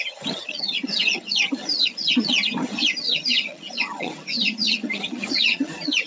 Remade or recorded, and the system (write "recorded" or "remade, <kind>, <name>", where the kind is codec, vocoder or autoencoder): remade, vocoder, HiFi-GAN